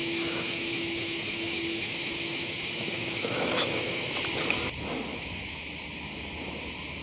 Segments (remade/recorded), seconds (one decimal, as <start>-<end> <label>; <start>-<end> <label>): 0.0-4.2 remade; 4.2-5.1 recorded; 5.1-5.6 remade; 5.6-7.0 recorded